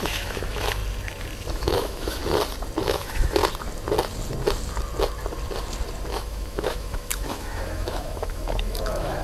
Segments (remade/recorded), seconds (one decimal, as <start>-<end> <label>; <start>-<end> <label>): 0.0-0.8 remade; 0.8-1.5 recorded; 1.5-2.2 remade; 2.2-2.8 recorded; 2.8-3.4 remade; 3.4-6.1 recorded; 6.1-9.2 remade

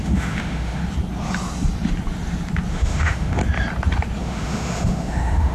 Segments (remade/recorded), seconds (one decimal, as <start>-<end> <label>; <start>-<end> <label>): 0.0-0.8 remade; 0.8-2.7 recorded; 2.7-3.4 remade; 3.4-4.2 recorded; 4.2-5.5 remade